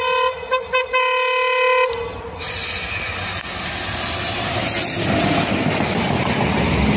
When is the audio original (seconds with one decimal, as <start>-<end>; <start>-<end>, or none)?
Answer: 0.0-7.0